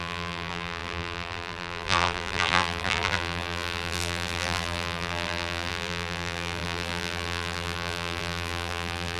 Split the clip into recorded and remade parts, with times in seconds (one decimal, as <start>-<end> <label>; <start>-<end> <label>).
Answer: 0.0-9.2 remade